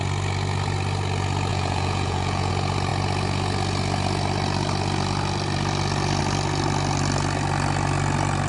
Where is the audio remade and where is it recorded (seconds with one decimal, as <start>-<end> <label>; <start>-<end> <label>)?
0.0-1.5 recorded; 1.5-2.5 remade; 2.5-8.5 recorded